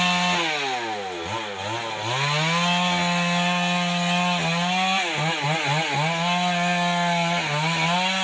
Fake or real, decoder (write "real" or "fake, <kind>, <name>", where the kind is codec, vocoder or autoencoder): real